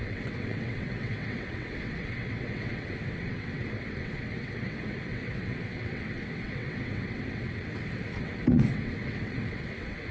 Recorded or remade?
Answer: remade